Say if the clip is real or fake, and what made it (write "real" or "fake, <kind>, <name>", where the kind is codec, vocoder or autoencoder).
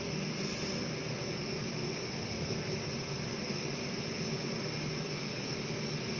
real